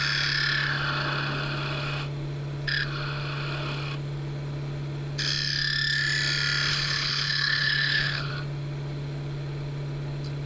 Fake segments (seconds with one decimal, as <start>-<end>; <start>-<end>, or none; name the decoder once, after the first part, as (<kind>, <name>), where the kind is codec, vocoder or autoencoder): 6.7-8.3 (codec, HILCodec)

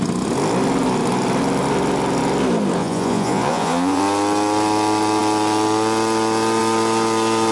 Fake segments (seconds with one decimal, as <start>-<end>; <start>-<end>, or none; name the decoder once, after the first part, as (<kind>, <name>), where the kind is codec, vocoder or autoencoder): 2.8-4.0 (vocoder, Vocos)